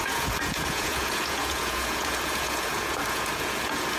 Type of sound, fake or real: fake